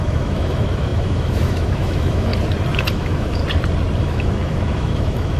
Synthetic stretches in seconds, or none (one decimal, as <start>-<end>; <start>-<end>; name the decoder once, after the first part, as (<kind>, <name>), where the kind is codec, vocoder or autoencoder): 0.0-2.3 (autoencoder, DAC-VAE); 2.9-3.4; 4.0-5.4